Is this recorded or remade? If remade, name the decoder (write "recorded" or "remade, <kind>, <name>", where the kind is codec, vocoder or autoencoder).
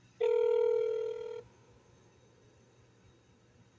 recorded